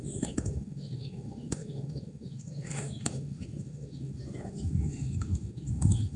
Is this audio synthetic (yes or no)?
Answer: yes